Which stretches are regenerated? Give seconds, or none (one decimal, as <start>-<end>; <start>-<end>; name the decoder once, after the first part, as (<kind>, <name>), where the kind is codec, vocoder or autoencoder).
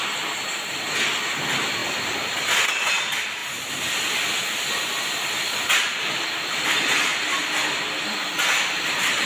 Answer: none